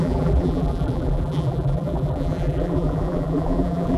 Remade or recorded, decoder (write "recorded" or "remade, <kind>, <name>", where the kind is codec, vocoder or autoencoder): remade, vocoder, BigVGAN v2